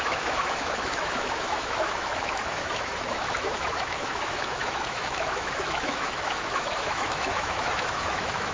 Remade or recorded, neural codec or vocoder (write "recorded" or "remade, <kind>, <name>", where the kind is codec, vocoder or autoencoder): remade, autoencoder, DAC-VAE